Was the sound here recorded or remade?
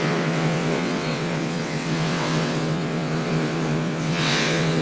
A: remade